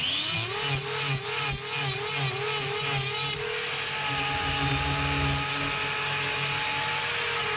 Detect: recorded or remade recorded